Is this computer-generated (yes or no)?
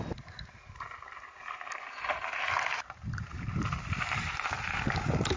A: no